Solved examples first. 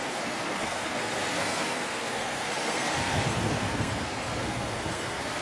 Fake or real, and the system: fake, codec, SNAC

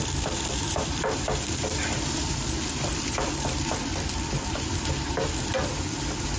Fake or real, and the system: fake, vocoder, BigVGAN v2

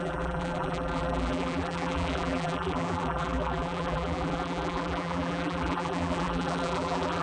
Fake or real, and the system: fake, vocoder, BigVGAN v2